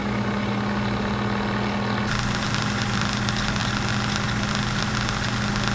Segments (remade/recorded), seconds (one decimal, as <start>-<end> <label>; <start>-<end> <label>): 0.0-5.7 recorded